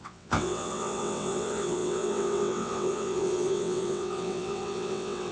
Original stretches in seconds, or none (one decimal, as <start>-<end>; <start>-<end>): none